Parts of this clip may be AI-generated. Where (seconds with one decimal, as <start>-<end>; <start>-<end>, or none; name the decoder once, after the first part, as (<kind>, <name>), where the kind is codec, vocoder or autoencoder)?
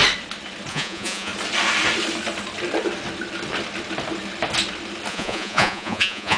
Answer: 0.7-1.3 (vocoder, Vocos); 5.1-6.4